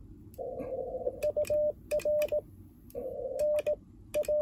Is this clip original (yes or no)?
yes